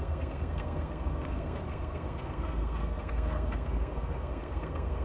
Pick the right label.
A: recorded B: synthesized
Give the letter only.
B